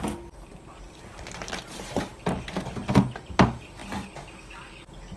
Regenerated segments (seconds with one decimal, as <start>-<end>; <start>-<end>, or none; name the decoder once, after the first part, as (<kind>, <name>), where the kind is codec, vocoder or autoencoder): none